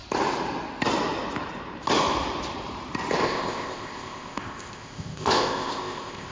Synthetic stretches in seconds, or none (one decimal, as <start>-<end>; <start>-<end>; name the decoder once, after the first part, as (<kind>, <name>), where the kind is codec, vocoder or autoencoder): 3.2-6.3 (codec, ZipCodec)